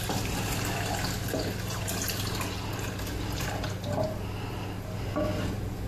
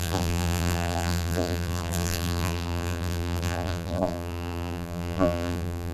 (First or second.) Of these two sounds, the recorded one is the first